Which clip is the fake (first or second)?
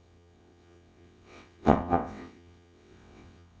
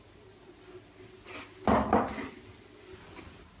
first